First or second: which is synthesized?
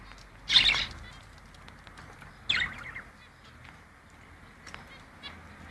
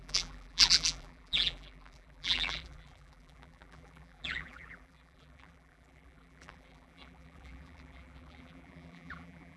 second